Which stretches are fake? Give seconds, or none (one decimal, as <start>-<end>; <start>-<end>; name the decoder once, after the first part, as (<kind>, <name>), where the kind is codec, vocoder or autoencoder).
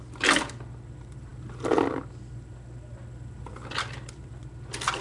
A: none